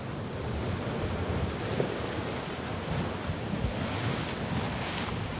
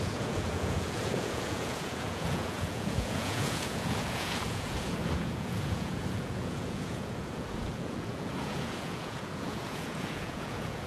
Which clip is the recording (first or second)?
first